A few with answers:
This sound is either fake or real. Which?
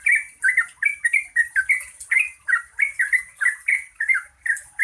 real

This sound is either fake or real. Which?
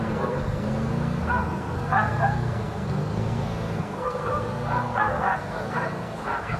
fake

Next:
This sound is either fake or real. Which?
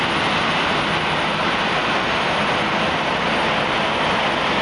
real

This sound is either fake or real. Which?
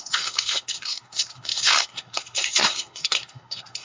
fake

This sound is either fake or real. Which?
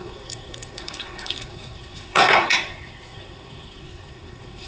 fake